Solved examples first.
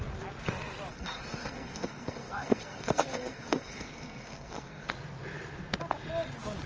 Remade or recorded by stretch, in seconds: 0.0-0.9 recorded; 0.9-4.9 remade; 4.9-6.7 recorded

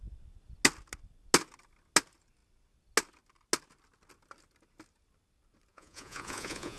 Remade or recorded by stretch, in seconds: 0.0-5.7 recorded; 5.7-6.8 remade

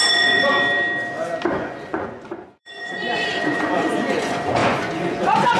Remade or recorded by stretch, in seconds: 0.0-0.5 remade; 0.5-1.6 recorded; 1.6-5.6 remade

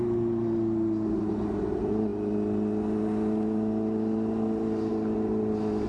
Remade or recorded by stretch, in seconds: 0.0-5.9 recorded

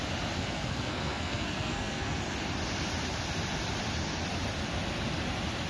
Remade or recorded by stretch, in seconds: 0.0-0.4 recorded; 0.4-2.2 remade; 2.2-5.7 recorded

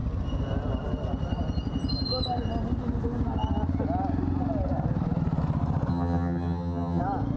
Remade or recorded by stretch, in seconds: 0.0-5.9 recorded; 5.9-7.0 remade; 7.0-7.4 recorded